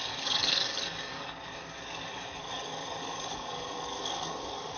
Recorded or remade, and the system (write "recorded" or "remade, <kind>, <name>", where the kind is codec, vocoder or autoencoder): remade, codec, DAC